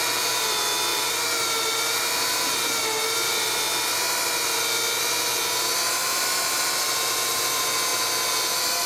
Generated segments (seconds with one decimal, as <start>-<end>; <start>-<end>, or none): 0.9-1.7